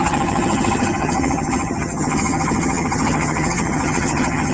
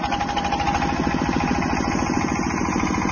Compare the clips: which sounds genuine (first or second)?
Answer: second